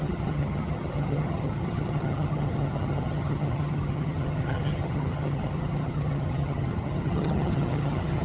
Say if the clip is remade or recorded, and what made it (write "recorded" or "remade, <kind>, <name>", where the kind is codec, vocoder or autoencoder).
remade, vocoder, HiFi-GAN